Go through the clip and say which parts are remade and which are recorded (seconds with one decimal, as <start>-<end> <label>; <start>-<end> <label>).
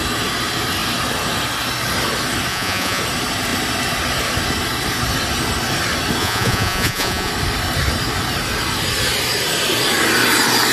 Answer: 0.0-2.5 recorded; 2.5-3.0 remade; 3.0-6.2 recorded; 6.2-7.3 remade; 7.3-10.7 recorded